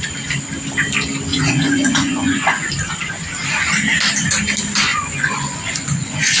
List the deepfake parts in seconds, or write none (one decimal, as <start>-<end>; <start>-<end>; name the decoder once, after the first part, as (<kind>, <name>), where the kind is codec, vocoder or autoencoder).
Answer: 1.3-2.7 (vocoder, Vocos); 4.9-6.4